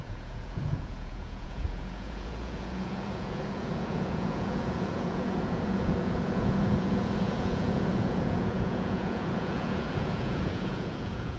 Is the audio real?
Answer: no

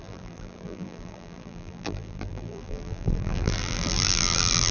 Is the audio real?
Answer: no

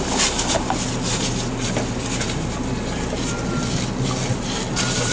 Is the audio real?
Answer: yes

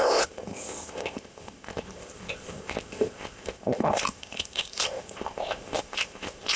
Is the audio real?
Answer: no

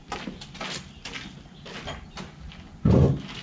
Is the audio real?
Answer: yes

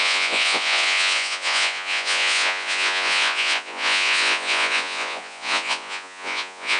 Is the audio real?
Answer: no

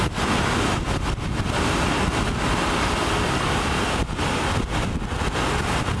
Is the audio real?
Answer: yes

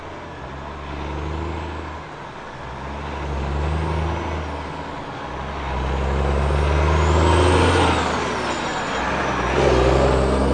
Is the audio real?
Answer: yes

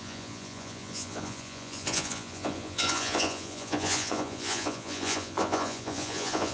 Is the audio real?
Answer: no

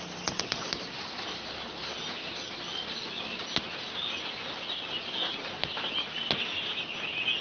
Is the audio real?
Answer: yes